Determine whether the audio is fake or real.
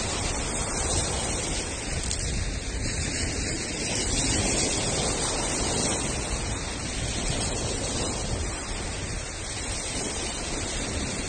real